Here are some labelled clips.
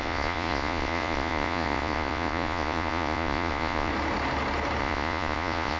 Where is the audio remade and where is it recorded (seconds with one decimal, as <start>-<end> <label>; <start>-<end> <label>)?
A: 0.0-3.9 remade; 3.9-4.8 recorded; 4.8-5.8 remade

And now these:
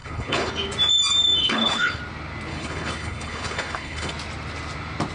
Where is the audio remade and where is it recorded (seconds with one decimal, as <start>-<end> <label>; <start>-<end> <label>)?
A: 0.0-0.5 remade; 0.5-1.4 recorded; 1.4-2.0 remade; 2.0-2.5 recorded; 2.5-4.1 remade; 4.1-5.1 recorded

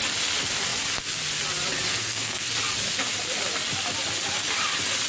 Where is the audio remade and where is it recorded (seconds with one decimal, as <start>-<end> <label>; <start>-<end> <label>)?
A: 0.0-1.9 recorded; 1.9-2.5 remade; 2.5-5.1 recorded